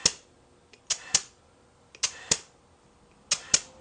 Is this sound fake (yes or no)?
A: no